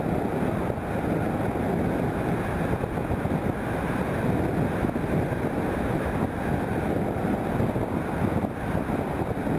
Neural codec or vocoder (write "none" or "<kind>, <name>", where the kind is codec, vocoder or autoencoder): none